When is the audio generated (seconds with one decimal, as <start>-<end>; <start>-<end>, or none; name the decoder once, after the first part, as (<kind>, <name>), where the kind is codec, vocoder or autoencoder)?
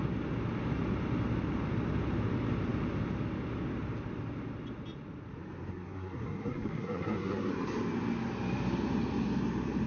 5.7-7.5 (codec, SNAC)